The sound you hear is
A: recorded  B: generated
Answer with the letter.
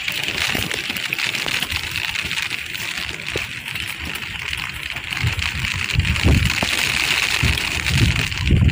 B